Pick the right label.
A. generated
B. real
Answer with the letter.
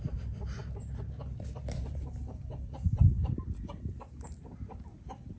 B